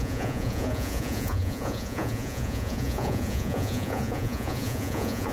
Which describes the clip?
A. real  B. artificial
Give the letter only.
B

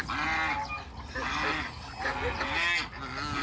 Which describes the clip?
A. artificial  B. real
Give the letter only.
B